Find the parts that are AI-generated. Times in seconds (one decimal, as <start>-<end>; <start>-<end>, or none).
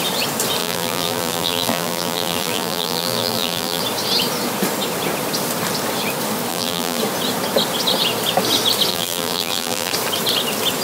0.6-3.8; 6.5-7.0; 8.9-9.9